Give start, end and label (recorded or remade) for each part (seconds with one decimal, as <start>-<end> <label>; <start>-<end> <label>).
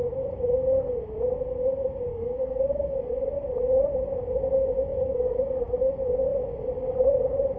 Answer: 0.0-2.1 recorded; 2.1-3.3 remade; 3.3-4.9 recorded; 4.9-5.6 remade; 5.6-7.6 recorded